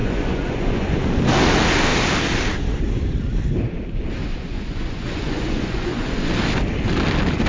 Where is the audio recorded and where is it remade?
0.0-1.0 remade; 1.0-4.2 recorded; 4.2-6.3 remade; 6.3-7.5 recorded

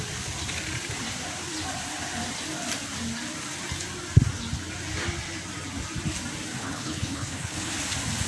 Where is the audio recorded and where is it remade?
0.0-6.6 recorded; 6.6-7.7 remade; 7.7-8.3 recorded

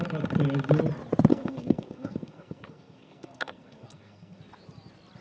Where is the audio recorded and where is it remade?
0.0-1.3 recorded; 1.3-4.4 remade; 4.4-5.2 recorded

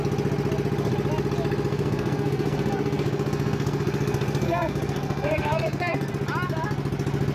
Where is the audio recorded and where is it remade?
0.0-1.7 recorded; 1.7-6.1 remade; 6.1-7.3 recorded

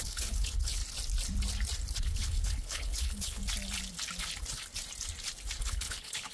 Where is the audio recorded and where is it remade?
0.0-0.8 remade; 0.8-2.0 recorded; 2.0-3.4 remade; 3.4-5.6 recorded; 5.6-6.3 remade